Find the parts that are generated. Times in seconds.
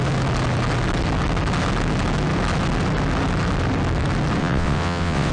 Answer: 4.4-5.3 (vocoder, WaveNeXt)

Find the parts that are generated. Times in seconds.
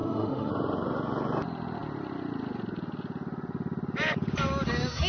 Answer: 0.0-0.5 (autoencoder, DAC-VAE)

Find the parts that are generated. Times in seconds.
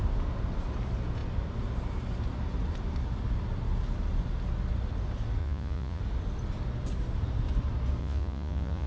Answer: 5.4-6.0 (vocoder, Vocos); 8.0-8.9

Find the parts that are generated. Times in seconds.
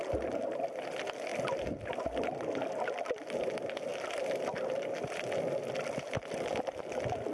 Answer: none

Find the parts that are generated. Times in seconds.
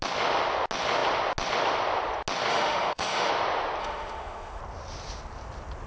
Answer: 2.5-3.3 (autoencoder, DAC-VAE); 3.8-4.6